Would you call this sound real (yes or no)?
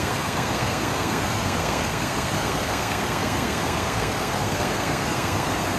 no